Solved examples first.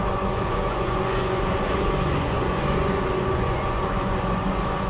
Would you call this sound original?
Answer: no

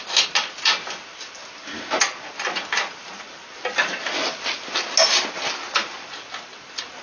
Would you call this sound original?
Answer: yes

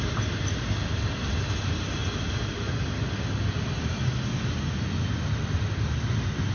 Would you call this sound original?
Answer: yes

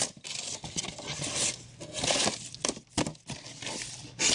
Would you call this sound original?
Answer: yes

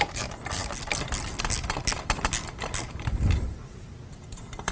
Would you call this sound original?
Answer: yes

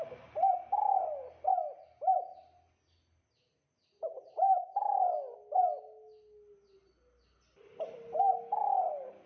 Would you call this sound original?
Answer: yes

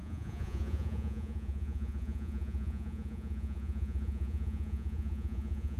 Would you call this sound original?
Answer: no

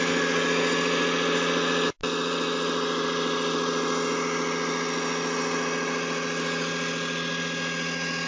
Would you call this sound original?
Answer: yes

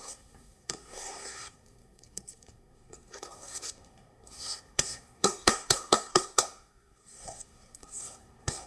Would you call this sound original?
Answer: no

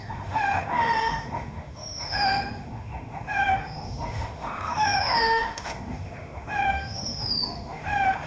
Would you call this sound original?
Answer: no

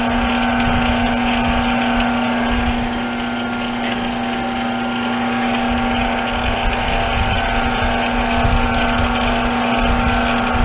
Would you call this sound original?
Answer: yes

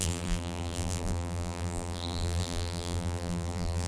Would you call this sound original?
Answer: no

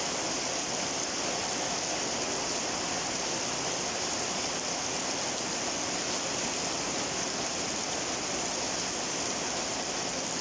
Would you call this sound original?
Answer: yes